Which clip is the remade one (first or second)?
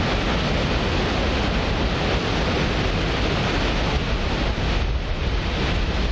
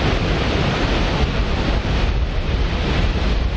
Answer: second